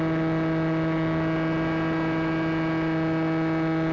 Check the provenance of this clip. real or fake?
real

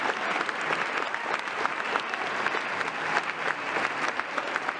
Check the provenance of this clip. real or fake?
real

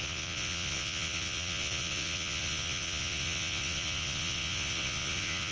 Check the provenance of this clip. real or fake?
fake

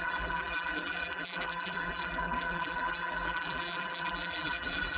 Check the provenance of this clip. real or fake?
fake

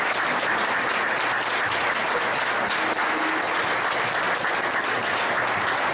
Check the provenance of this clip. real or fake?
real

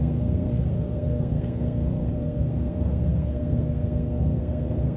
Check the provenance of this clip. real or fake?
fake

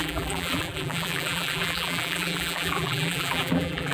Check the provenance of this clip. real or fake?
fake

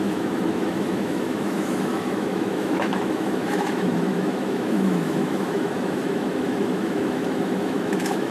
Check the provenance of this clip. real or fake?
fake